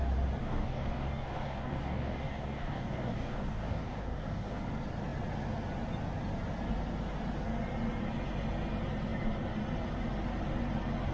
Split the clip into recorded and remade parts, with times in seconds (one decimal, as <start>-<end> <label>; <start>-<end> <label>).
0.0-0.4 recorded; 0.4-4.6 remade; 4.6-11.1 recorded